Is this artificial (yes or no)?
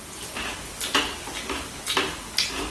no